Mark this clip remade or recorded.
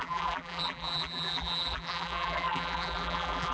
remade